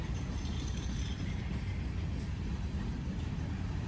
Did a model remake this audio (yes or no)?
no